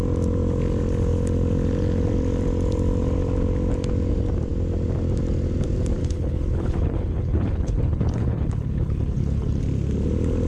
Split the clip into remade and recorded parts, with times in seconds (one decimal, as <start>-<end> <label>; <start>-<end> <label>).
0.0-6.0 recorded; 6.0-9.6 remade; 9.6-10.5 recorded